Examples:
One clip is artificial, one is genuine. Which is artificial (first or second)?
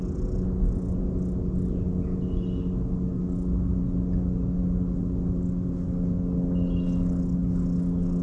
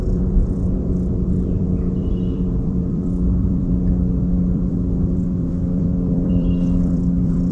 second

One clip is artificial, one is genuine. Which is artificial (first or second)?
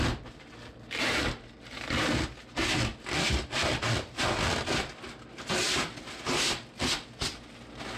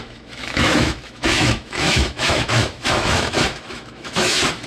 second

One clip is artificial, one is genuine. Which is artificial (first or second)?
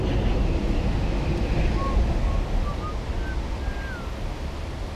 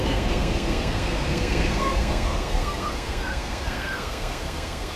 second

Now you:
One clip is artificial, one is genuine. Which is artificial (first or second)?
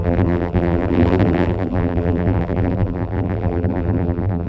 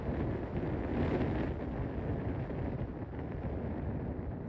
first